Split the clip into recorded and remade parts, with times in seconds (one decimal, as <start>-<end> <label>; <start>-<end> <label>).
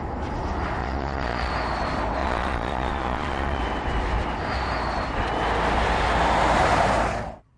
0.0-0.8 recorded; 0.8-1.5 remade; 1.5-2.2 recorded; 2.2-3.6 remade; 3.6-7.6 recorded